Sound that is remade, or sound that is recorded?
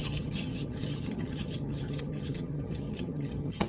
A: remade